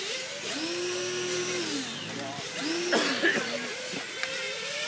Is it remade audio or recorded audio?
remade